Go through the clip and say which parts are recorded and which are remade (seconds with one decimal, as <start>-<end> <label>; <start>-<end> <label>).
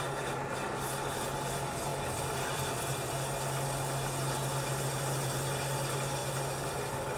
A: 0.0-1.9 recorded; 1.9-2.7 remade; 2.7-7.2 recorded